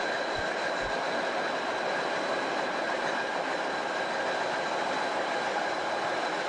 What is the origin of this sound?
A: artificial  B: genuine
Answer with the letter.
A